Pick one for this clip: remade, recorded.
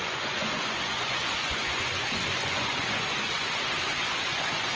remade